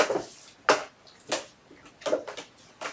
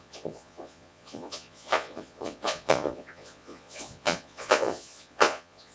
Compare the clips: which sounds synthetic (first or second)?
second